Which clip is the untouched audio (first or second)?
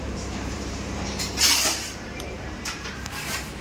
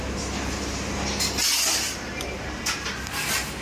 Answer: second